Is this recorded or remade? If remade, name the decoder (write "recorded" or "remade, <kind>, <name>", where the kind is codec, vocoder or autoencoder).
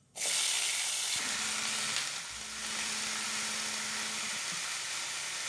recorded